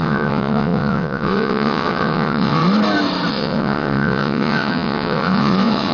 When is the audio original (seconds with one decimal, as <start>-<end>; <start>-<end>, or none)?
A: 2.6-3.3